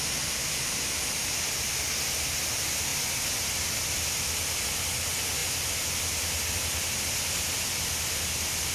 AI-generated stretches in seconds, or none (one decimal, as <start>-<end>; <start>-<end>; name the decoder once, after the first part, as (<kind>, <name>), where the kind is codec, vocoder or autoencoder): none